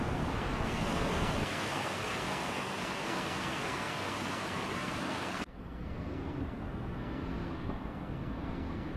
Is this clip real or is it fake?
fake